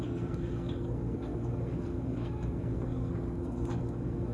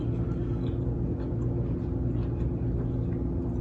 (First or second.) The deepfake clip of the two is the first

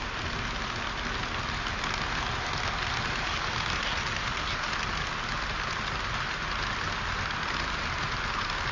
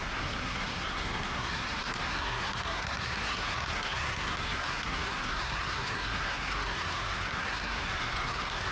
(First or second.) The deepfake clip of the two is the second